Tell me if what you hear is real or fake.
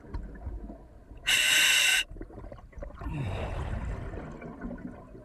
real